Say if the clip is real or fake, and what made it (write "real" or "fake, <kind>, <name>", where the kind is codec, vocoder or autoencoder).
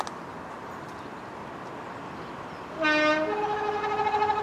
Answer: real